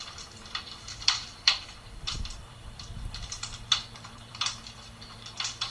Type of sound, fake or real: fake